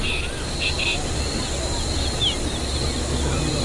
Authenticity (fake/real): real